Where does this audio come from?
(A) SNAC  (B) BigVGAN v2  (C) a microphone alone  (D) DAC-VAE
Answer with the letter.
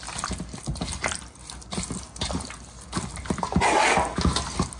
C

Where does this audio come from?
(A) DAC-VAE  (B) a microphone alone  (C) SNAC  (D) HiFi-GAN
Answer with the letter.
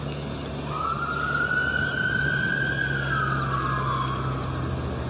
B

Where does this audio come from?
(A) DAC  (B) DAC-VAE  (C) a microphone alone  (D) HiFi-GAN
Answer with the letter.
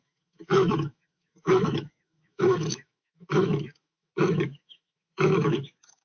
B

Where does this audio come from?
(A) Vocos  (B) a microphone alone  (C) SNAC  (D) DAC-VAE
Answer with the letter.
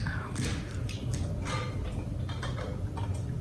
B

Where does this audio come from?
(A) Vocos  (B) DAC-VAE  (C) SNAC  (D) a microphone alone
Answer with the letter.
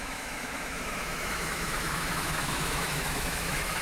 B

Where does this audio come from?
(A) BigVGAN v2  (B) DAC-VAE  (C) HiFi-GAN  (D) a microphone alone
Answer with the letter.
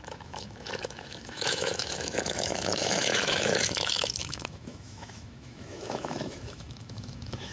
B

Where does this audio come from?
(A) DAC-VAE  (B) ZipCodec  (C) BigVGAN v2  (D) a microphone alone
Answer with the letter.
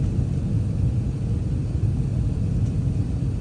D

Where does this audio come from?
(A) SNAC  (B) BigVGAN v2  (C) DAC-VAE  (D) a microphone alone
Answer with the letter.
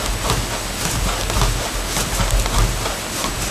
D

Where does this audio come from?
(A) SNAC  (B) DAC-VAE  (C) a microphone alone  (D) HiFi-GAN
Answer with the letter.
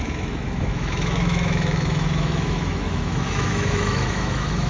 B